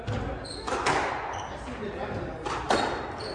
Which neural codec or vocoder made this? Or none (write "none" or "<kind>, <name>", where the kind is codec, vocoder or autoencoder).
none